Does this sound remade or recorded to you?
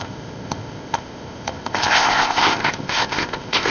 remade